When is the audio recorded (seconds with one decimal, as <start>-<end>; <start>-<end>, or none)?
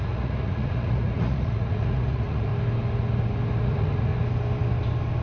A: 2.5-3.6; 4.1-5.2